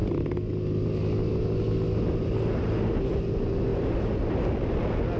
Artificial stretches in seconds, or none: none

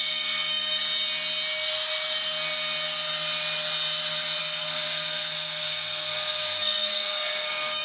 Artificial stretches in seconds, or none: 0.0-0.8 (codec, SNAC); 4.4-7.8

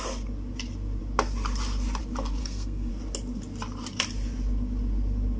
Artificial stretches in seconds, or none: 2.4-2.9 (codec, SNAC)